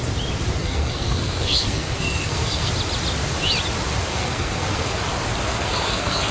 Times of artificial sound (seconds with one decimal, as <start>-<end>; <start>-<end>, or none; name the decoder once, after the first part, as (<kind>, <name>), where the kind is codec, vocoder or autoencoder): 0.6-2.7 (codec, SNAC); 4.1-5.0; 5.5-6.3